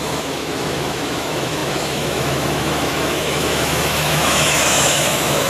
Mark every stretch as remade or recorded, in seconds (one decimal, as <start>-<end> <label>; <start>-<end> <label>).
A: 0.0-5.5 remade